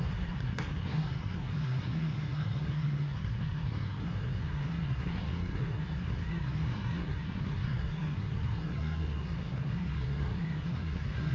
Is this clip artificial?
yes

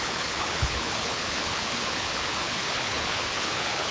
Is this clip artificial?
yes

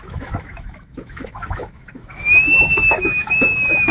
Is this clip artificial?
yes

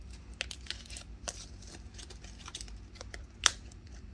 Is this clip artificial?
no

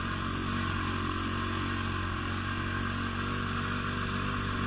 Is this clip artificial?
no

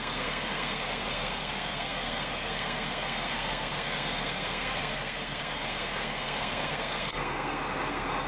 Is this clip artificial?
yes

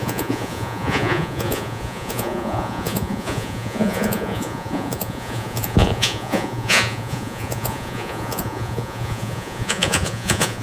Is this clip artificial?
yes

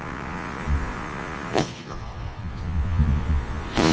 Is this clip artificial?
yes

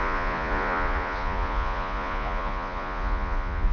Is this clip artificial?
yes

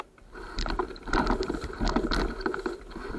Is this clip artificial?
yes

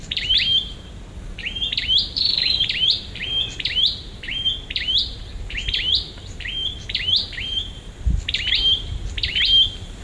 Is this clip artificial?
yes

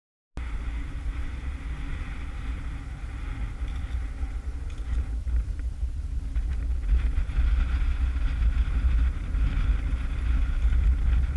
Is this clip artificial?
no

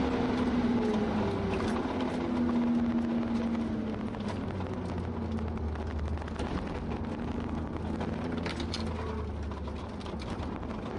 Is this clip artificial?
no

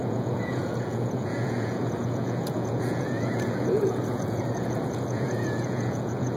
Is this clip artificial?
yes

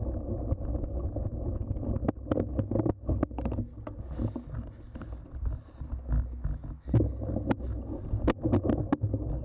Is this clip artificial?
no